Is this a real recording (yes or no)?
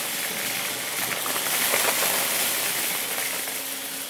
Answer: yes